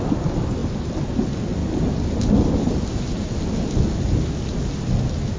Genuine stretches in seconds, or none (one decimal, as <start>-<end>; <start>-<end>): 0.0-5.4